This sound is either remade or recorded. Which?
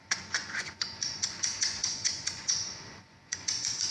remade